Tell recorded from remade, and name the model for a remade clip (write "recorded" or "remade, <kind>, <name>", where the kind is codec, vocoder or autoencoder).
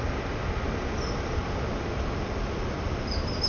recorded